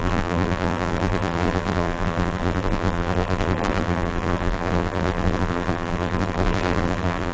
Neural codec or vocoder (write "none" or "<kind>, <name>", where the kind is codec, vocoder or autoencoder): vocoder, BigVGAN v2